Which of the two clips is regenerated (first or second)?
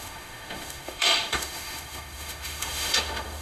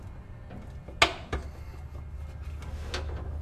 first